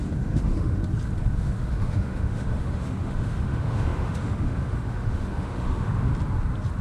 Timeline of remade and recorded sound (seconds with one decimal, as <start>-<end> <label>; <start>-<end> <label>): 0.0-0.8 remade; 0.8-1.3 recorded; 1.3-6.1 remade; 6.1-6.8 recorded

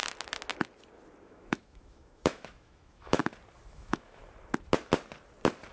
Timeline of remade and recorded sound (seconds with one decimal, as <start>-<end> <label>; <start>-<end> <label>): 0.0-1.2 recorded; 1.2-3.2 remade; 3.2-3.7 recorded; 3.7-4.2 remade; 4.2-5.7 recorded